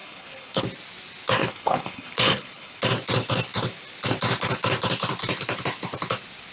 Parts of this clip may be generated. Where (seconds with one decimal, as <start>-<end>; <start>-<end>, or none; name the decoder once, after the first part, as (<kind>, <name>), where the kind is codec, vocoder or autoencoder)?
0.0-0.6 (codec, HILCodec); 1.4-2.8